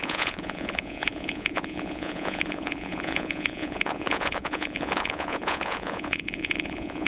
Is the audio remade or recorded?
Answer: remade